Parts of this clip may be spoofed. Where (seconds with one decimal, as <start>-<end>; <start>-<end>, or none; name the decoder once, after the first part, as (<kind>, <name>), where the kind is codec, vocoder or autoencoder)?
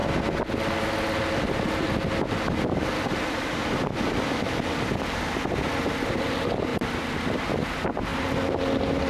none